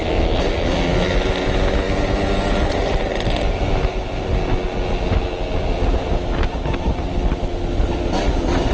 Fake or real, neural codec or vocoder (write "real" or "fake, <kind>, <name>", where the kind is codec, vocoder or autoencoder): real